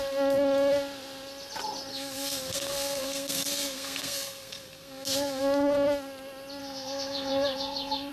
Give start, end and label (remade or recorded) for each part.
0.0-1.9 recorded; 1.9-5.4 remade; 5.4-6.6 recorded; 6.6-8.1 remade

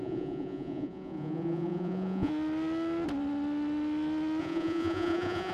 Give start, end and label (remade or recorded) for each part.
0.0-2.3 remade; 2.3-4.4 recorded; 4.4-5.5 remade

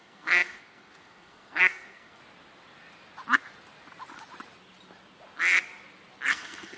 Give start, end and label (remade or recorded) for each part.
0.0-2.2 remade; 2.2-6.3 recorded; 6.3-6.8 remade

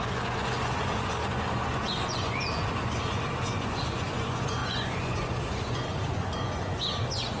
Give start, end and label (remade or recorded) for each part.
0.0-7.4 remade

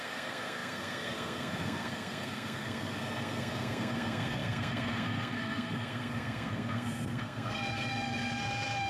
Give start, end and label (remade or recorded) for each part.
0.0-8.9 remade